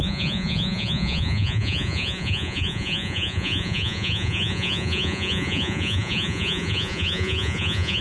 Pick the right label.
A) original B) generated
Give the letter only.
B